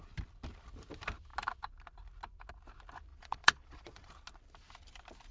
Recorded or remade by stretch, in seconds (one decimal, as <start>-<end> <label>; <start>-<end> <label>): 0.0-3.1 recorded; 3.1-4.1 remade; 4.1-5.3 recorded